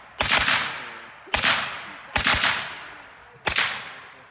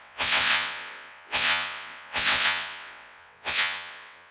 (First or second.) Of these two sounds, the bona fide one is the first